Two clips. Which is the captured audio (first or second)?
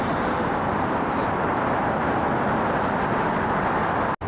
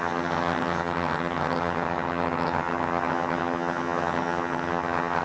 first